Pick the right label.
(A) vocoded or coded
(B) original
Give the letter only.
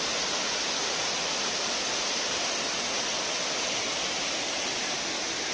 B